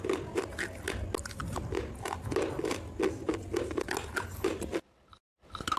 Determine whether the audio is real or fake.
real